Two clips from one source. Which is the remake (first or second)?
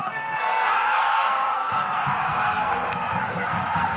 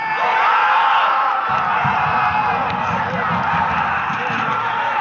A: first